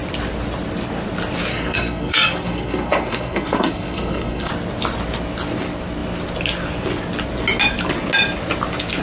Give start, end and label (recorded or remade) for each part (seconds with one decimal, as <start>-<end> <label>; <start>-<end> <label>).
0.0-1.5 recorded; 1.5-4.5 remade; 4.5-9.0 recorded